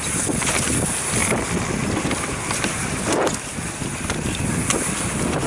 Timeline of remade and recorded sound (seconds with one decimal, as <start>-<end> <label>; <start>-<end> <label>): 0.0-5.5 recorded